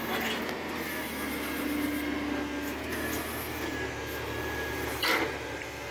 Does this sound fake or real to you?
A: real